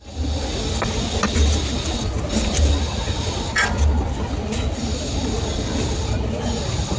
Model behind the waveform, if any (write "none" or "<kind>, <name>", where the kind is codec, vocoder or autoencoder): none